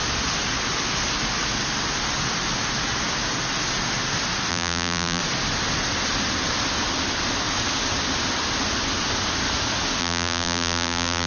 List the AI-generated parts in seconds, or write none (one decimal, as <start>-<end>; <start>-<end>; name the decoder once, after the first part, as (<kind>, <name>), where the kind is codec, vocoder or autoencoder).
4.5-5.2 (vocoder, BigVGAN v2); 10.0-11.3